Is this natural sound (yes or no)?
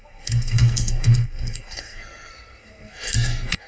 no